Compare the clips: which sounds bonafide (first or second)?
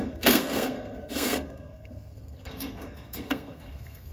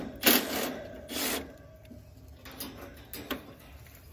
second